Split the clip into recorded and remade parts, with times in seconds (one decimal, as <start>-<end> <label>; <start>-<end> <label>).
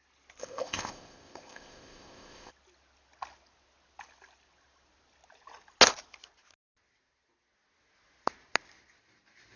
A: 0.0-0.4 recorded; 0.4-2.5 remade; 2.5-9.6 recorded